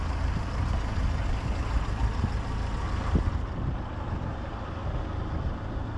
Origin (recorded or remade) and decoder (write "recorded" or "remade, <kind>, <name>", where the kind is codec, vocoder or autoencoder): recorded